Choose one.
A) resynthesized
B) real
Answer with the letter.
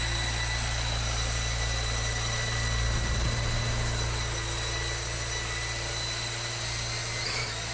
B